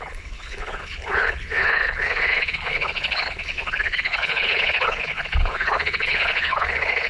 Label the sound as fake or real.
fake